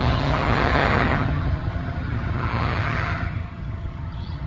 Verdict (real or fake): fake